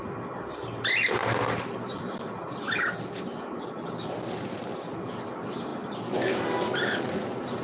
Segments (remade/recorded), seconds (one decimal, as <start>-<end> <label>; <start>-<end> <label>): 0.0-1.2 recorded; 1.2-5.0 remade; 5.0-5.7 recorded; 5.7-7.0 remade; 7.0-7.6 recorded

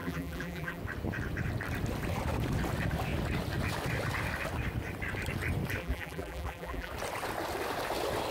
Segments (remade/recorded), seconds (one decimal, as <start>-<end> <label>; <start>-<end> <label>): 0.0-0.8 remade; 0.8-5.8 recorded; 5.8-6.9 remade; 6.9-8.3 recorded

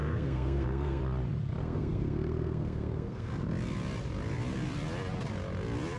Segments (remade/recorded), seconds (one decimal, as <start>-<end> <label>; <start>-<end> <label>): 0.0-1.0 remade; 1.0-1.6 recorded; 1.6-3.3 remade; 3.3-6.0 recorded

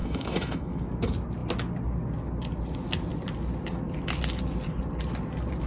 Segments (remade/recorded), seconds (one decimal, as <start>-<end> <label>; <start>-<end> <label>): 0.0-0.7 remade; 0.7-5.7 recorded

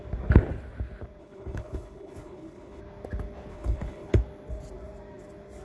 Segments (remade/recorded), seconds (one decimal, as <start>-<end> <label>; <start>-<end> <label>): 0.0-1.2 recorded; 1.2-2.8 remade; 2.8-3.5 recorded; 3.5-4.1 remade; 4.1-5.6 recorded

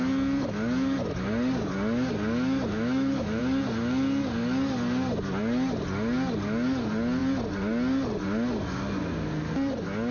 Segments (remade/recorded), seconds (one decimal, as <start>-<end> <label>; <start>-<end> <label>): 0.0-2.7 recorded; 2.7-3.4 remade; 3.4-10.1 recorded